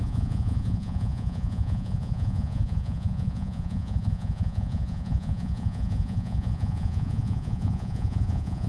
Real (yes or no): no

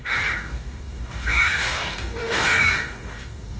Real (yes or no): no